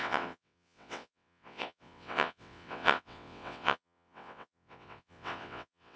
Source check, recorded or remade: remade